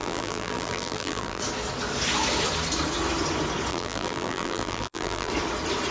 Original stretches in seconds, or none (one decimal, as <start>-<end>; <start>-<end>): 1.4-3.7; 5.3-5.9